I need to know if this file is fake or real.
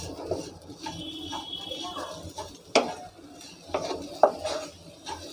real